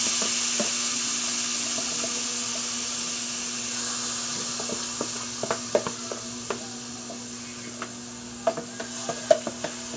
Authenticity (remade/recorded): recorded